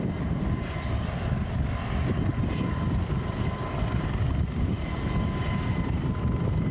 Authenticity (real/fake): real